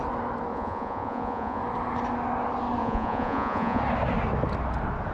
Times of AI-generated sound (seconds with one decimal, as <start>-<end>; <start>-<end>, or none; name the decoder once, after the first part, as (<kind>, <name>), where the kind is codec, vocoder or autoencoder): 0.5-1.6 (vocoder, Vocos); 2.8-3.8